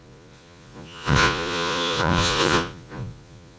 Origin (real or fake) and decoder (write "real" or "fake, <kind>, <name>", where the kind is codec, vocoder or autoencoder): fake, vocoder, Vocos